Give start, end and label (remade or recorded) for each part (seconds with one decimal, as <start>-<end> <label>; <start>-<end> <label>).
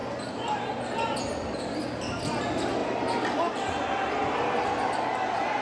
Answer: 0.0-5.6 recorded